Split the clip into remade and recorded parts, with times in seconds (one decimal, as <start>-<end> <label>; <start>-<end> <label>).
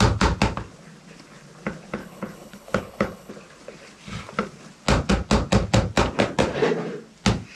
0.0-2.0 recorded; 2.0-3.3 remade; 3.3-7.5 recorded